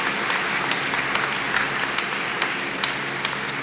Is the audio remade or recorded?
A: recorded